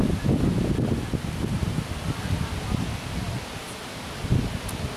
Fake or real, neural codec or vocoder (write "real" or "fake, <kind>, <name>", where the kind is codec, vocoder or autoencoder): real